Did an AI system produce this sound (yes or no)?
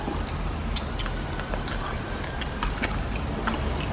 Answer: no